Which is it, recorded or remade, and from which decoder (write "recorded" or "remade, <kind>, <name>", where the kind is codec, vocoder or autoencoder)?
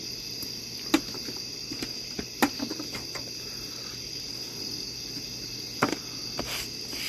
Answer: recorded